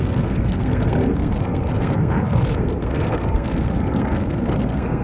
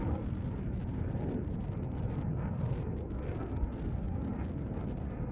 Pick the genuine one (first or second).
second